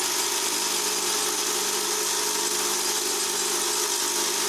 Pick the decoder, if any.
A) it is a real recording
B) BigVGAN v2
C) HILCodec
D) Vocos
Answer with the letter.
A